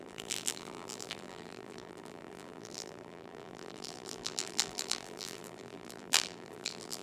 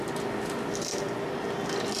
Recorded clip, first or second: second